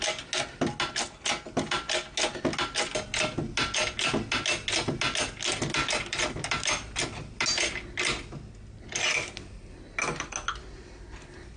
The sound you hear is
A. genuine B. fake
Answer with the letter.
A